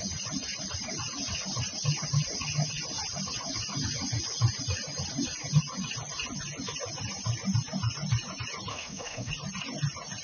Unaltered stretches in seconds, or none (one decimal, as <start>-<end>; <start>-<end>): 0.0-8.7; 9.3-10.2